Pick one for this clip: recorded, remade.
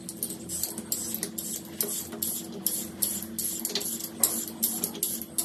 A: recorded